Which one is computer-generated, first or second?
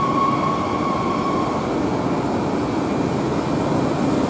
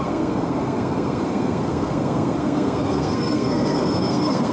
second